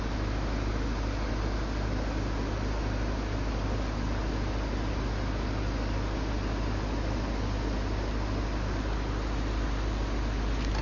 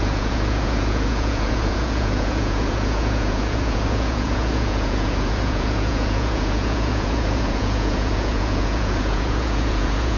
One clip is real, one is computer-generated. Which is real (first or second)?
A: first